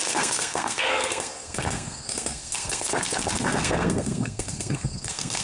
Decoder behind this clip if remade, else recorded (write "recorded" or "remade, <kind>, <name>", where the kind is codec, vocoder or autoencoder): remade, codec, SNAC